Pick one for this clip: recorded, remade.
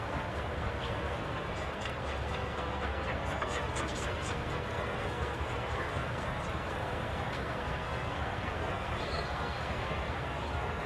remade